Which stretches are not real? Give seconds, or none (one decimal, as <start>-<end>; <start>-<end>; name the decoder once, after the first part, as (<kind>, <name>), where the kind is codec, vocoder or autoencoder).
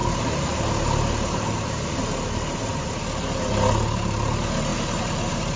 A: 0.0-3.4 (vocoder, BigVGAN v2); 4.7-5.6